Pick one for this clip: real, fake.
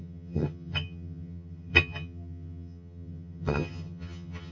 fake